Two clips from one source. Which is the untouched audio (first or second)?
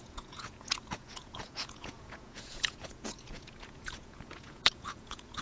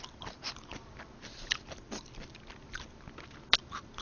second